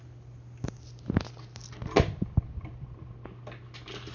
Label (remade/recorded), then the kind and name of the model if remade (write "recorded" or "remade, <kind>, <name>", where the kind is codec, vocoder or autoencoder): recorded